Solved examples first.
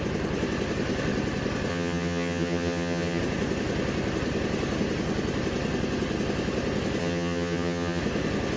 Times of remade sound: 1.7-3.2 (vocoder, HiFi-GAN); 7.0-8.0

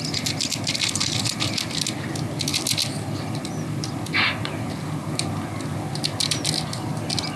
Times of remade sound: none

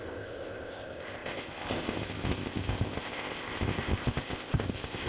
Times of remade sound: 0.0-5.1 (codec, ZipCodec)

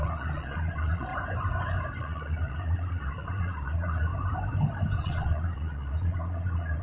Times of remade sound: 0.0-1.1 (vocoder, Vocos); 2.0-4.1; 5.0-6.8

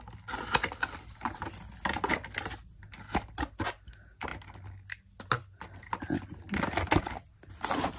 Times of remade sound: none

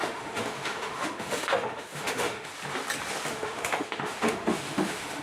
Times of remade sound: 0.0-2.5 (autoencoder, DAC-VAE); 3.3-5.2

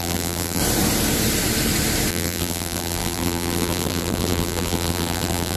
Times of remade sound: 0.0-0.6 (vocoder, BigVGAN v2); 2.1-5.6

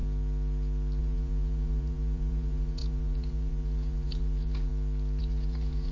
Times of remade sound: 1.0-4.7 (vocoder, Vocos); 5.2-5.9